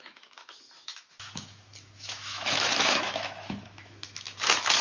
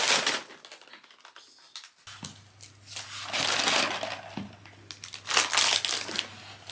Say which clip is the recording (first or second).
second